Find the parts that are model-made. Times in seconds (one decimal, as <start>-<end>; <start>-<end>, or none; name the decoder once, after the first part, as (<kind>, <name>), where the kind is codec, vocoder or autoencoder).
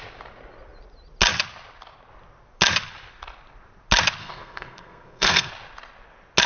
4.2-5.5 (codec, SNAC)